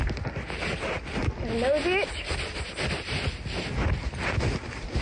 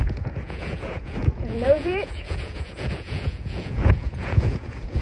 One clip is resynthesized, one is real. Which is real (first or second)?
first